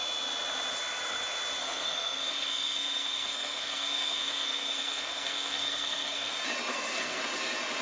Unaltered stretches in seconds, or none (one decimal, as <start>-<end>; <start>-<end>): 0.0-1.6; 6.3-6.7; 7.2-7.8